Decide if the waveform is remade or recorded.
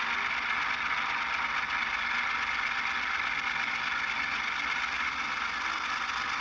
recorded